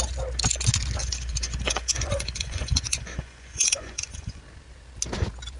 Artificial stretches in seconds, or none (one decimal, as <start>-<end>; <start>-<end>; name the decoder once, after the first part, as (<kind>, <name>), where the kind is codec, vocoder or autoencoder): 1.0-4.4 (vocoder, Vocos)